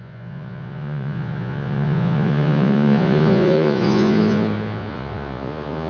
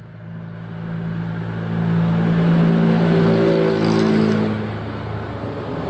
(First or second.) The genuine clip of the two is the second